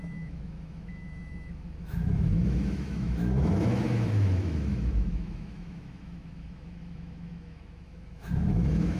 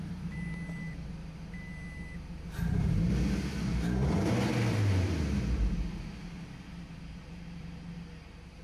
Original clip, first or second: second